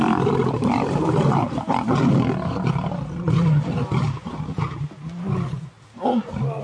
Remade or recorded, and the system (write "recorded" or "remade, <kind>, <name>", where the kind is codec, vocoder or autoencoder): recorded